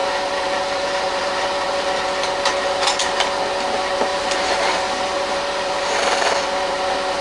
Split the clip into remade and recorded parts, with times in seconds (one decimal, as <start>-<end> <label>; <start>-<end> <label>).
0.0-1.9 remade; 1.9-4.1 recorded; 4.1-5.9 remade; 5.9-7.2 recorded